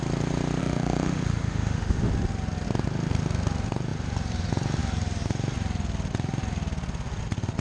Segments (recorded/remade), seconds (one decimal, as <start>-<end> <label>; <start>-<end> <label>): 0.0-0.6 recorded; 0.6-2.1 remade; 2.1-7.6 recorded

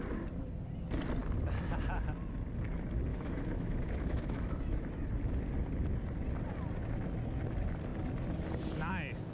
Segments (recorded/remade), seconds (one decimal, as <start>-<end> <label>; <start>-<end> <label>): 0.0-3.1 recorded; 3.1-4.9 remade; 4.9-9.3 recorded

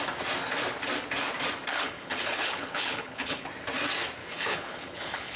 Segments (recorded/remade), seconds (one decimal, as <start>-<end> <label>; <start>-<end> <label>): 0.0-1.7 recorded; 1.7-3.5 remade; 3.5-4.2 recorded; 4.2-5.4 remade

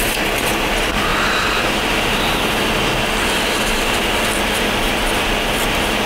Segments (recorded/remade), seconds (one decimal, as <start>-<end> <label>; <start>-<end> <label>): 0.0-1.1 recorded; 1.1-2.2 remade; 2.2-6.1 recorded

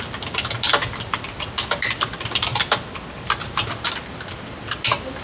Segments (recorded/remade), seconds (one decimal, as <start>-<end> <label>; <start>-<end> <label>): 0.0-5.2 recorded

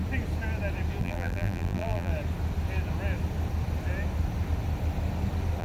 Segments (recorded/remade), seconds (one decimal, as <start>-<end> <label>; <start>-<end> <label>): 0.0-1.0 recorded; 1.0-2.1 remade; 2.1-5.6 recorded

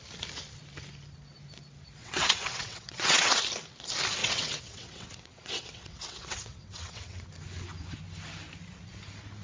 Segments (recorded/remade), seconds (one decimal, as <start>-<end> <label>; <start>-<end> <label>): 0.0-2.0 recorded; 2.0-3.4 remade; 3.4-4.2 recorded; 4.2-7.3 remade; 7.3-9.4 recorded

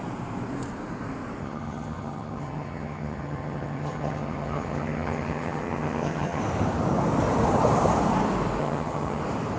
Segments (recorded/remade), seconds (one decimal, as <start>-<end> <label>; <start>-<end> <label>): 0.0-1.4 recorded; 1.4-6.4 remade; 6.4-8.6 recorded; 8.6-9.2 remade; 9.2-9.6 recorded